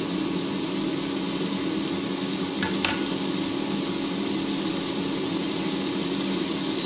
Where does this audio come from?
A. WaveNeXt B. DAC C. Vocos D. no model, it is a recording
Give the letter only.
D